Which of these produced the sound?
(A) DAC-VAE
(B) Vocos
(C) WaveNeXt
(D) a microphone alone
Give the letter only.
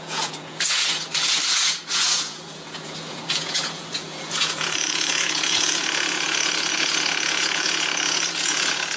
B